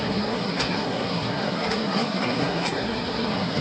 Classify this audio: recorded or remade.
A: remade